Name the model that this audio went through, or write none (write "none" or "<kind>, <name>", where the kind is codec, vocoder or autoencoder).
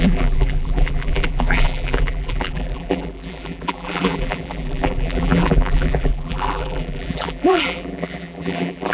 vocoder, BigVGAN v2